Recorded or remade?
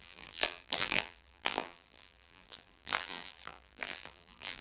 remade